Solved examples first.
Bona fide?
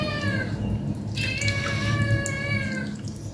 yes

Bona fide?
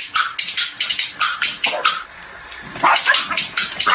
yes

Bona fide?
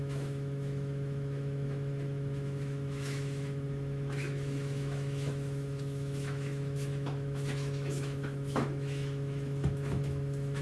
no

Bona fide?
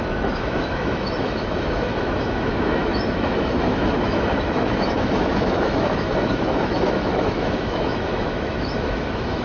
no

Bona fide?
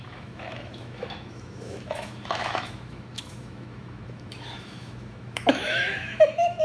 no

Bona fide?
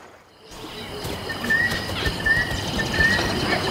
yes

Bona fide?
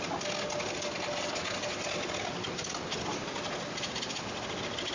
yes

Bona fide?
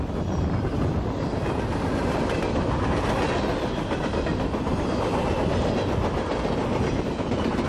yes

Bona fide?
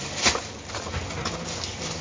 yes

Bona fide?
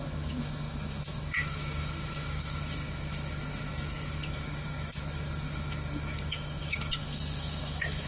no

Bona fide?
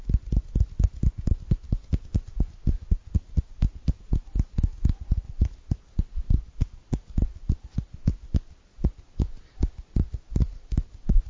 yes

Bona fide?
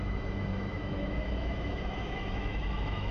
no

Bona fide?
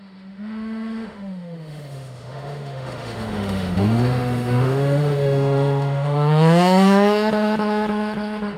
no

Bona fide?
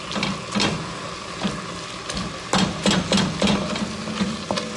yes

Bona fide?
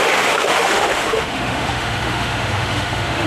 no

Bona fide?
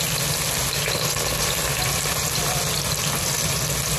yes